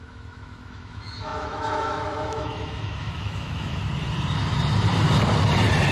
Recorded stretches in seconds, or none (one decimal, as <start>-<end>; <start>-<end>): 3.8-5.9